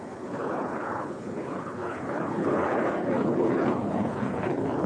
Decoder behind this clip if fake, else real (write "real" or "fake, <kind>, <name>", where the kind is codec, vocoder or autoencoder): fake, codec, HILCodec